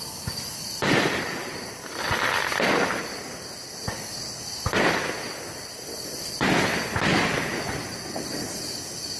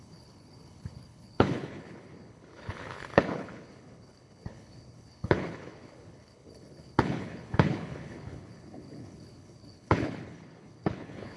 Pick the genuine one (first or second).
first